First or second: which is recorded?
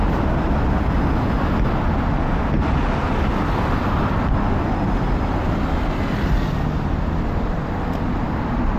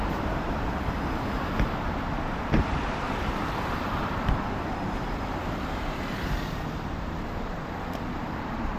first